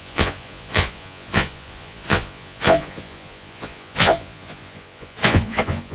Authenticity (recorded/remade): remade